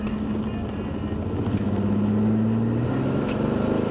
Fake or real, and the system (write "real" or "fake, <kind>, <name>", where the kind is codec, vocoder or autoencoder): real